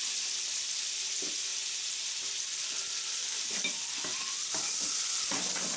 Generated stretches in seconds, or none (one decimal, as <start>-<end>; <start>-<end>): 0.0-1.5; 5.0-5.8